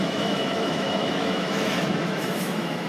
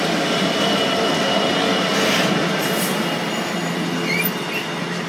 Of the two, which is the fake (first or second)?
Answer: first